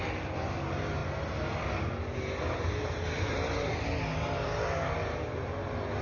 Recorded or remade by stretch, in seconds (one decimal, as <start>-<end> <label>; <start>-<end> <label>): 0.0-6.0 recorded